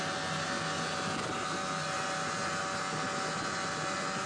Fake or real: real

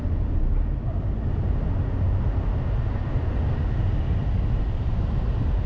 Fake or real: real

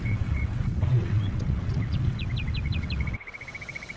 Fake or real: fake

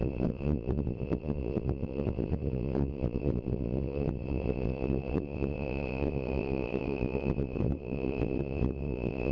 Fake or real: fake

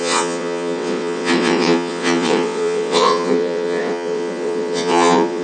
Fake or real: fake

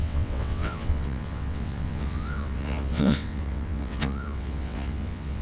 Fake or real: fake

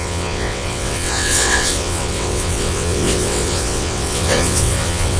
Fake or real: fake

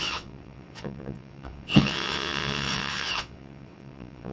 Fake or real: fake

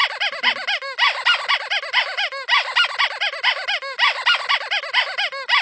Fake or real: real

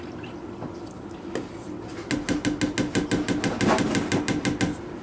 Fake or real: real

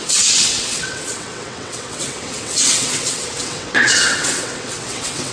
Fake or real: fake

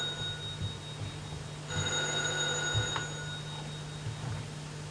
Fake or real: real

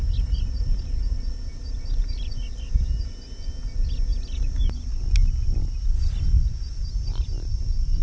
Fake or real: real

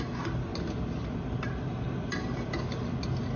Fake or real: real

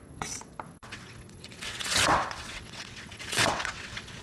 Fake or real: fake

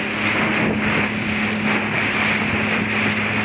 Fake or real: real